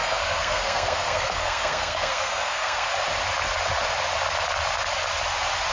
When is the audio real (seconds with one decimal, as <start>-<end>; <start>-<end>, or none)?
2.9-5.7